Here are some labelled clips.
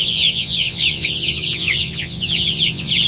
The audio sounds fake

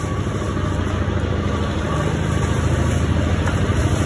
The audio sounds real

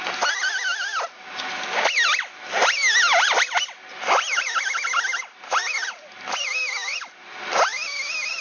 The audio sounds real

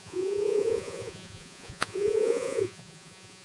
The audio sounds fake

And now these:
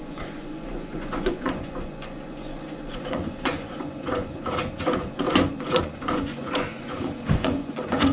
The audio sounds fake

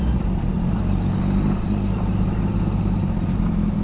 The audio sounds real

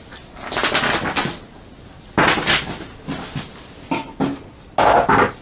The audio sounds real